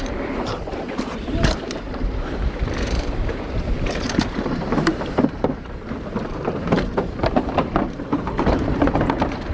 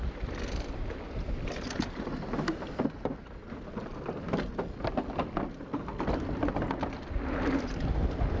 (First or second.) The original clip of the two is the second